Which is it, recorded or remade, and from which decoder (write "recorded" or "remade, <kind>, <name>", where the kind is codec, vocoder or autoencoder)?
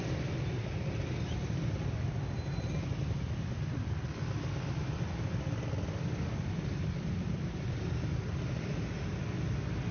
recorded